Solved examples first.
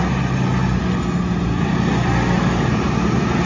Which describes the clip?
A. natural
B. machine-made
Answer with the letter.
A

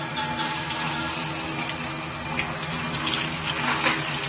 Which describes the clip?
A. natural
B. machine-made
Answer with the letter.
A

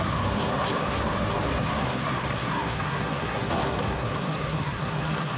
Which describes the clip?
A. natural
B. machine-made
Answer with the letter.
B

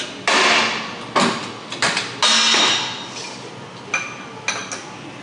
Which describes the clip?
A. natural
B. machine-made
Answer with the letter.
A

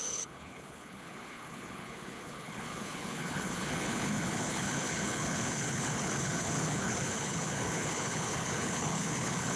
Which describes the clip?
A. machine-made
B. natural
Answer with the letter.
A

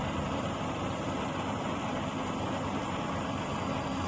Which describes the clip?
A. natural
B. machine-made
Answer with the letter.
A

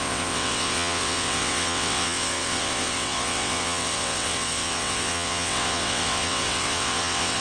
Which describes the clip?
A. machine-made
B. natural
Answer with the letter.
A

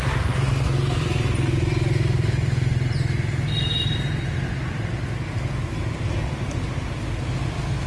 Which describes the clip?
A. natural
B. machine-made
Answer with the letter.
A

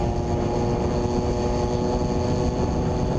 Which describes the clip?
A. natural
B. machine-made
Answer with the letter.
A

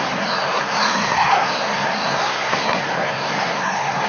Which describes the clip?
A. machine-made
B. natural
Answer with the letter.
A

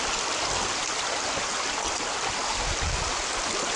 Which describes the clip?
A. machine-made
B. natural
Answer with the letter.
B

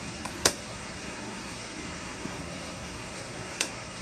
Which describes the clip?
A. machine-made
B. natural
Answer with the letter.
A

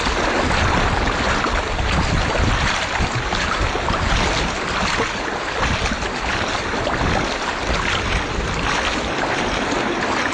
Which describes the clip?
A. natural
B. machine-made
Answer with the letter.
A